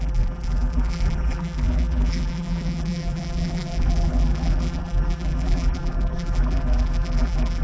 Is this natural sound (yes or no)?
no